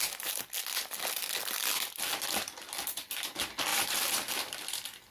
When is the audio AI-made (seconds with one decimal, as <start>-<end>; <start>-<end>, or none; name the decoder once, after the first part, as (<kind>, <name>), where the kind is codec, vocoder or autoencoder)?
3.7-4.3 (vocoder, BigVGAN v2)